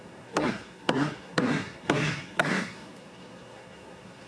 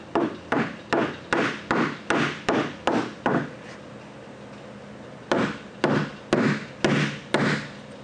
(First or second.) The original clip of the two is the second